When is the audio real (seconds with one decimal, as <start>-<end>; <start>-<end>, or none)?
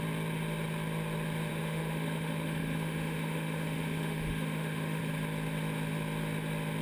0.0-1.5; 5.0-6.8